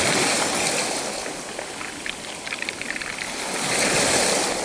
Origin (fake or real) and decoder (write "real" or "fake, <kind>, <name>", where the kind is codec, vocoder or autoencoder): real